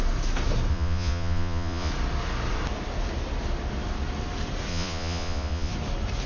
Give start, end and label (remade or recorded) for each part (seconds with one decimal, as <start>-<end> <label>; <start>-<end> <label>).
0.0-0.7 recorded; 0.7-1.9 remade; 1.9-4.7 recorded; 4.7-5.7 remade; 5.7-6.3 recorded